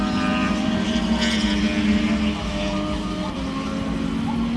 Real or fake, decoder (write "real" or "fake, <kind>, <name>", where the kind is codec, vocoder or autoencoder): real